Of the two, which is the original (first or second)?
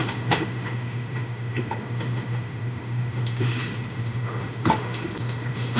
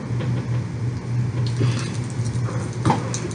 second